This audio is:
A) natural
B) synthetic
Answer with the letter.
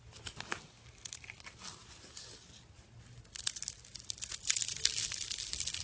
A